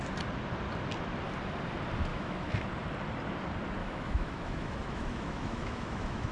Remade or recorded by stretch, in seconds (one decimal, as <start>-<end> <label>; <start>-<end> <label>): 0.0-2.1 recorded; 2.1-2.7 remade; 2.7-3.8 recorded; 3.8-6.3 remade